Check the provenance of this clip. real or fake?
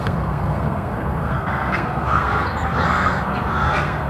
fake